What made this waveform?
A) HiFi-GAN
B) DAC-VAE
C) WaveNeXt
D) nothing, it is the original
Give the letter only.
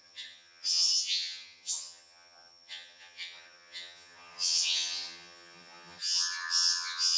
A